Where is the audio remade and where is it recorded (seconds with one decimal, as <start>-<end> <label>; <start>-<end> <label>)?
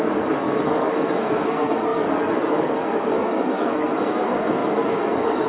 0.0-5.5 remade